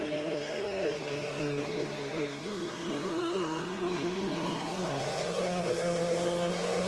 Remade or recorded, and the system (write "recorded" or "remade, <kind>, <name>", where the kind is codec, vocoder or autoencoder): remade, codec, SNAC